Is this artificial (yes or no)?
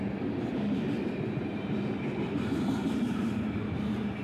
yes